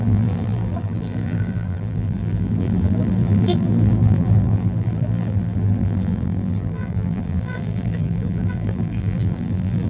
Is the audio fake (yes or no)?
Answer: yes